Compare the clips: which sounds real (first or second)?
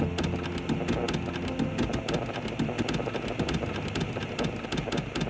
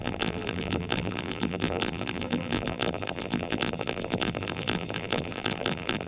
first